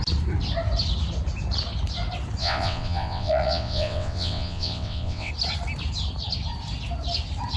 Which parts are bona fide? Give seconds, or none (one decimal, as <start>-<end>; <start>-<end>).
0.0-2.4; 5.3-7.6